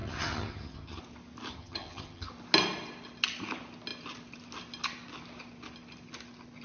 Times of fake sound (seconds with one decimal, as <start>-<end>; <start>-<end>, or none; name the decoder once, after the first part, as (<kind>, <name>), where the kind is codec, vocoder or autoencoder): 0.0-1.0 (vocoder, HiFi-GAN); 1.5-2.3

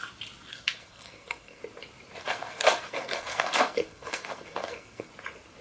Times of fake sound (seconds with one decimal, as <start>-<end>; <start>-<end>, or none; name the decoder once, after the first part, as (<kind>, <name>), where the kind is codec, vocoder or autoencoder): 0.5-1.6 (codec, SNAC); 2.2-5.1

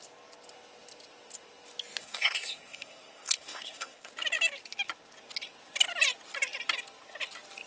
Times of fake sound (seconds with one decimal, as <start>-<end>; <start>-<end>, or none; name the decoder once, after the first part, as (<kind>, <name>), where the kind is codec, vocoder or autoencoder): 2.0-4.1 (codec, SNAC)

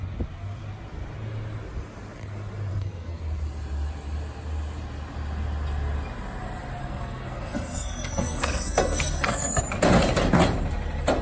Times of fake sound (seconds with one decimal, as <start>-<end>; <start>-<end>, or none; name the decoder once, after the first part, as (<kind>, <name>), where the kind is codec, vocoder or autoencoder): 2.7-3.2 (codec, SNAC); 6.8-9.6

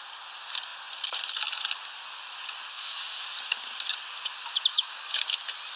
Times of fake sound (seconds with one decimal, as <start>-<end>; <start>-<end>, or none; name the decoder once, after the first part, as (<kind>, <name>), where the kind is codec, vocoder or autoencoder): 2.7-3.2 (codec, DAC); 4.7-5.3

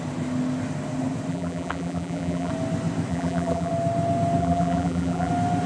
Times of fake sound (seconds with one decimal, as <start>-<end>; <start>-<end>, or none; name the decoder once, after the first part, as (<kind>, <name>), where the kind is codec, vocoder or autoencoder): 1.3-2.5 (vocoder, BigVGAN v2); 3.1-3.7; 4.4-5.3

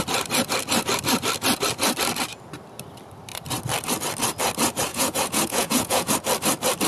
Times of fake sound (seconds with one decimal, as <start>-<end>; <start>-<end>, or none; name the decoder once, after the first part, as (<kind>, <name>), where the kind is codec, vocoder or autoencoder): 4.9-6.1 (vocoder, Vocos)

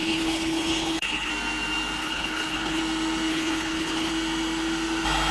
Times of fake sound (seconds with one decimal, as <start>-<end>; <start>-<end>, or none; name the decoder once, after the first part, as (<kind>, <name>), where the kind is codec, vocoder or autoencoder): 0.0-1.3 (codec, HILCodec); 2.0-2.8; 3.3-4.1